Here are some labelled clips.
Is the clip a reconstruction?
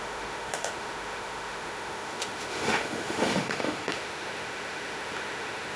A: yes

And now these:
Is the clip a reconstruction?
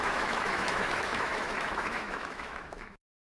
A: yes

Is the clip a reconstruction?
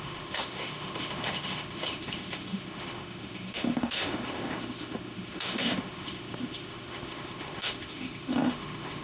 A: yes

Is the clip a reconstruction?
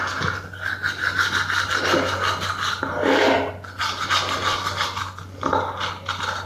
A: no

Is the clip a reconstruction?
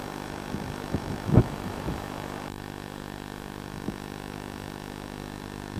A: yes